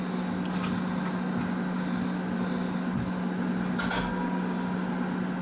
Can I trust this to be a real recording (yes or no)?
yes